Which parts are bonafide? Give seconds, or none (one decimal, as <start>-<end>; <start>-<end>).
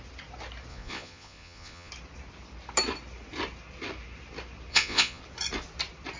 0.0-0.7; 1.9-4.7; 5.2-6.2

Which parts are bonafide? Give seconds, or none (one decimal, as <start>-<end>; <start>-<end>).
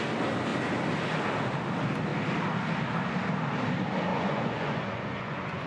0.0-4.1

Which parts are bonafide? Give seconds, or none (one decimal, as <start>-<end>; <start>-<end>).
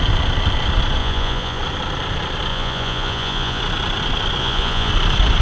0.0-1.0; 1.6-2.5; 3.6-4.4; 4.9-5.4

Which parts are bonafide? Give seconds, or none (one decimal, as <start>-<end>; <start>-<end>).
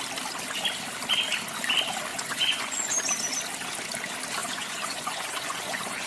0.0-2.1; 2.9-4.4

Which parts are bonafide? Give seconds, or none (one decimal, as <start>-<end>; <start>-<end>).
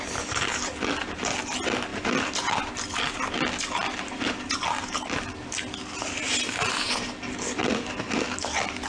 0.0-8.9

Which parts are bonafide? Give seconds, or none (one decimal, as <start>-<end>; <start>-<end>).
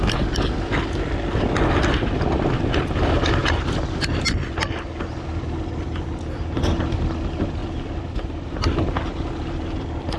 0.0-10.2